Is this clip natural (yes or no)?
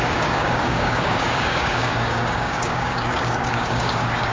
no